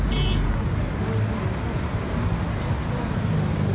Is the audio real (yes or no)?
yes